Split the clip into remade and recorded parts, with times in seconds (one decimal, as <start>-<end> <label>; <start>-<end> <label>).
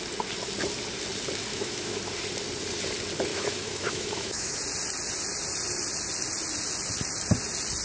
0.0-1.5 recorded; 1.5-2.0 remade; 2.0-3.3 recorded; 3.3-4.6 remade; 4.6-7.8 recorded